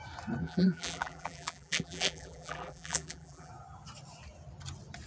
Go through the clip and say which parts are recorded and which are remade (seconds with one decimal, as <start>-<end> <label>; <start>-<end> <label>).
0.0-0.4 recorded; 0.4-3.5 remade; 3.5-5.1 recorded